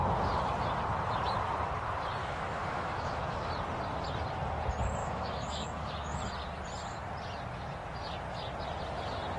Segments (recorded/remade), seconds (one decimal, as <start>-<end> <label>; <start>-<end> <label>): 0.0-2.2 recorded; 2.2-3.5 remade; 3.5-5.0 recorded; 5.0-6.2 remade; 6.2-9.4 recorded